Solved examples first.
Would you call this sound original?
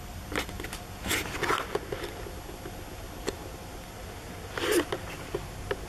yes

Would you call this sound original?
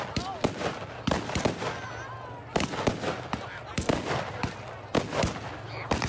yes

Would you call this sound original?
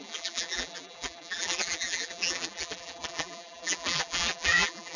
no